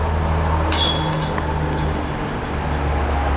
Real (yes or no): yes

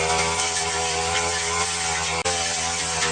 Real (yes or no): yes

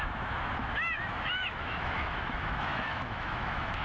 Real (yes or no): no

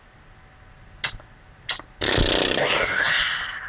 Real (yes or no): yes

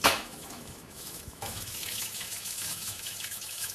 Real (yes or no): no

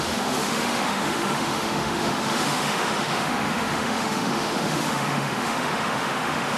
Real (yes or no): no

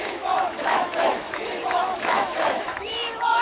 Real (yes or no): no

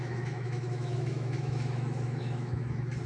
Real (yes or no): no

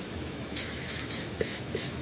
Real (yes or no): no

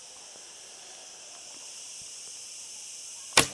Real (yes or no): yes